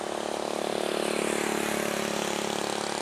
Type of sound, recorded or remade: recorded